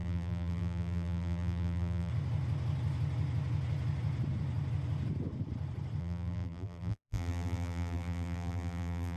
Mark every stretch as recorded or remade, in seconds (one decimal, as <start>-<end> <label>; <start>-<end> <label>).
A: 0.0-2.1 remade; 2.1-6.0 recorded; 6.0-9.2 remade